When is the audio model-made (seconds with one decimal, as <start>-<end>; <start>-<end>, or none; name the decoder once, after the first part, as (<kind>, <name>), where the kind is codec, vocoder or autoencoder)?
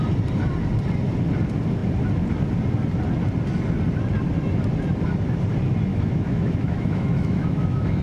5.9-8.0 (autoencoder, DAC-VAE)